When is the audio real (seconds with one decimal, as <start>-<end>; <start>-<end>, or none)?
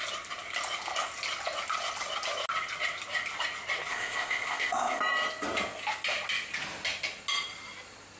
0.0-3.9; 5.0-8.2